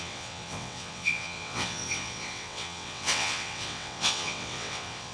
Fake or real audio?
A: fake